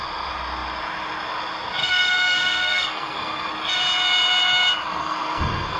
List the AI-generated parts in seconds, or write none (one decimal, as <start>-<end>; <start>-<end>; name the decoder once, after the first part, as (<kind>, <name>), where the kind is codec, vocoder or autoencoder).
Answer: 1.8-3.5 (codec, SNAC); 5.0-5.8